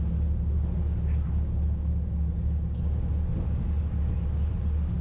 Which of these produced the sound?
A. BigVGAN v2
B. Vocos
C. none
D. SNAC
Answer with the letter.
C